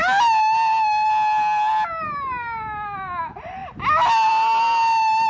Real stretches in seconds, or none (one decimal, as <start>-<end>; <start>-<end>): 0.0-5.3

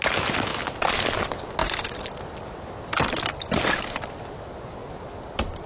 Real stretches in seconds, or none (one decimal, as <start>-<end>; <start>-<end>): 0.0-5.7

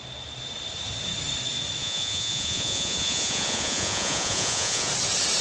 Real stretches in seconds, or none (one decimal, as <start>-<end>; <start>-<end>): 0.0-1.8; 4.9-5.4

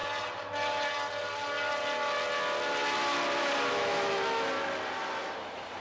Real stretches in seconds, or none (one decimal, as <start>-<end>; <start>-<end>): 0.0-3.7; 4.5-5.8

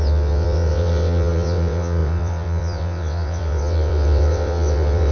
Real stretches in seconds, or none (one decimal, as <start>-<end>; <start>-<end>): none

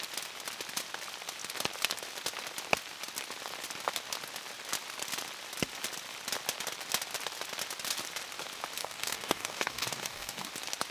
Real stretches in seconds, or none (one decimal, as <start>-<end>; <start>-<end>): 0.0-8.8; 10.5-10.9